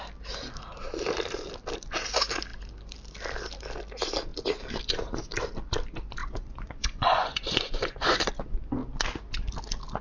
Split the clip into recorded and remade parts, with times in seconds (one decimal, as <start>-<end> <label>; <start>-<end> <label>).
0.0-6.2 recorded; 6.2-8.3 remade; 8.3-10.0 recorded